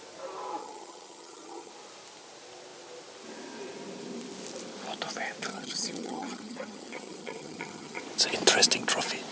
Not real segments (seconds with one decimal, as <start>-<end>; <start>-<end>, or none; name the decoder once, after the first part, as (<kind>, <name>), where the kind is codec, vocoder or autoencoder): 0.6-1.7 (vocoder, HiFi-GAN); 5.5-8.0